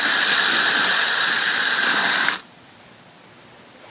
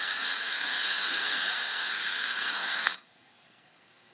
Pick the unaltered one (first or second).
first